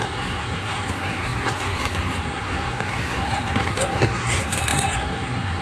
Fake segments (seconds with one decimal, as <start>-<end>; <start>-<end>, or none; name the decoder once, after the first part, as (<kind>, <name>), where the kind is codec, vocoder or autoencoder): 0.0-5.6 (codec, SNAC)